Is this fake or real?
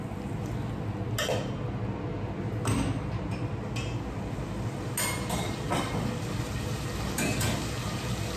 real